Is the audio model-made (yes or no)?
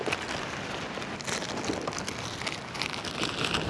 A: no